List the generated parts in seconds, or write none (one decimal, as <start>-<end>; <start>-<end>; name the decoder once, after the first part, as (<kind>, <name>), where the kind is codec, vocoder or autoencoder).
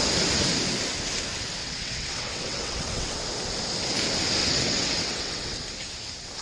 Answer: 1.6-3.2 (vocoder, WaveNeXt); 4.4-5.6